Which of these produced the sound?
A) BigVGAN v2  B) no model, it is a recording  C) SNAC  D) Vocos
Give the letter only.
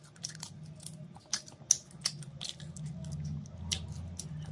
B